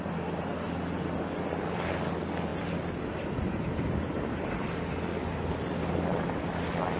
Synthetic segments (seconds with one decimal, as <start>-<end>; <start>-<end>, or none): none

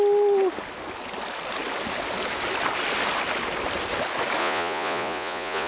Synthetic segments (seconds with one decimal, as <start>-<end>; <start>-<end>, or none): 4.4-5.7

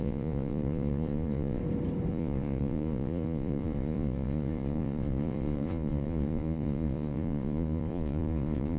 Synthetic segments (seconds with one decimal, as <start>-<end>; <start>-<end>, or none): 0.0-1.6; 2.1-8.8

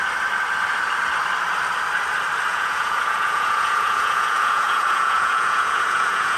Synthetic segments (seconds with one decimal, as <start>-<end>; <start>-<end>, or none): 2.5-6.4

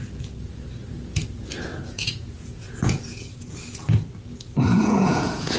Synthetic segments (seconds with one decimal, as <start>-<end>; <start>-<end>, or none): 1.7-3.6; 4.7-5.6

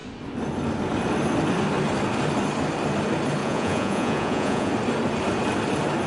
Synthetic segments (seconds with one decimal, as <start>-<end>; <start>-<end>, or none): 3.4-4.7

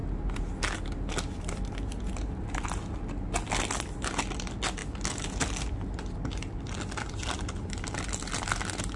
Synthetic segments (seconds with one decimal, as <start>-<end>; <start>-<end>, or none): none